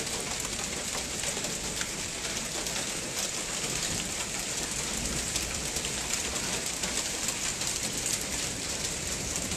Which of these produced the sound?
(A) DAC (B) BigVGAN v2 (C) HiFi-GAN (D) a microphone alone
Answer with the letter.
B